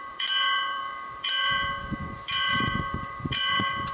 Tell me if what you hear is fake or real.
fake